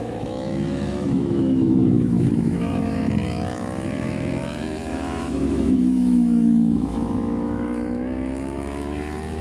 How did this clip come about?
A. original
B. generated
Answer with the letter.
B